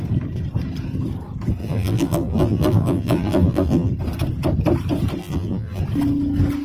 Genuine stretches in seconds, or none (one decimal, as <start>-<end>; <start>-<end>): 0.0-1.6; 3.9-5.2; 5.8-6.6